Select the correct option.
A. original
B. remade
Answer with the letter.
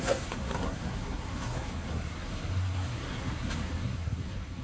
B